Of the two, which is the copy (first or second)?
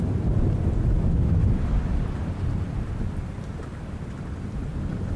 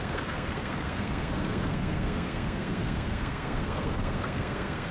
second